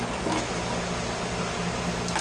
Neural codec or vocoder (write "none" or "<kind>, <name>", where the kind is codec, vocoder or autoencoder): none